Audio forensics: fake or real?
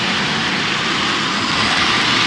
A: real